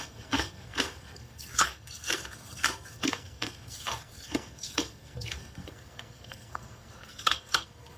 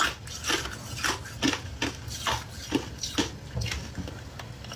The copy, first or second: first